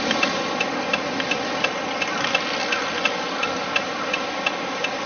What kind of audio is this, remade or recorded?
recorded